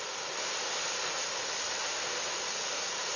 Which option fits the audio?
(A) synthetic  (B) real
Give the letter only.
B